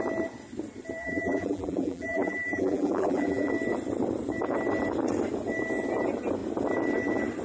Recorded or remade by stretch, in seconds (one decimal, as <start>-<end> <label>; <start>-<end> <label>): 0.0-1.0 recorded; 1.0-3.5 remade; 3.5-7.4 recorded